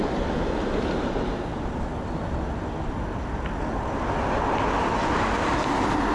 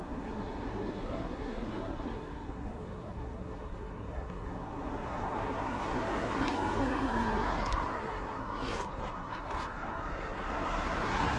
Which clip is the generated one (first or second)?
second